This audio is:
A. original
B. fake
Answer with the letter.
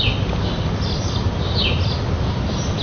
A